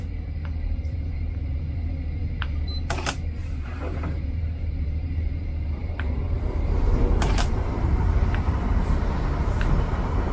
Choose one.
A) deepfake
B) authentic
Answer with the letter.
A